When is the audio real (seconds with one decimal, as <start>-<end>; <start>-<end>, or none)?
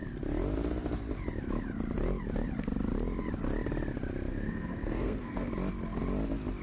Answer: 0.0-4.3; 5.5-6.6